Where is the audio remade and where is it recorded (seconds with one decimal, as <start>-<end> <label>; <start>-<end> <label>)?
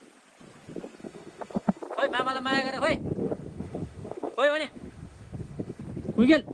0.0-1.0 recorded; 1.0-1.8 remade; 1.8-3.2 recorded; 3.2-5.8 remade; 5.8-6.5 recorded